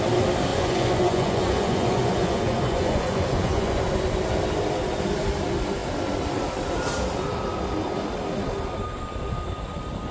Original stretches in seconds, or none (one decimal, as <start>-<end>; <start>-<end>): 0.0-0.5; 3.8-10.1